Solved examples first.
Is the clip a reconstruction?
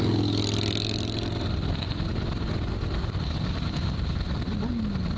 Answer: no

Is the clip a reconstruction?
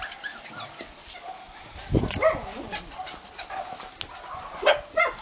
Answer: no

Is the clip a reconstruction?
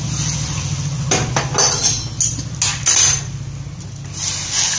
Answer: no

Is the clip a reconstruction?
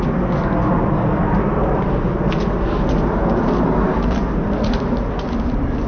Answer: no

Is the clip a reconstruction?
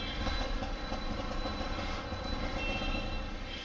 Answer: no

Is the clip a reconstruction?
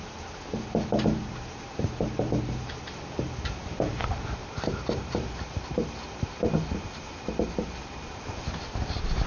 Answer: yes